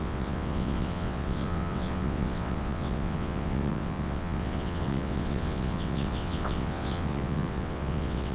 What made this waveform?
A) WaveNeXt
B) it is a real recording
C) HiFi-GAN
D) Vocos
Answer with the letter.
A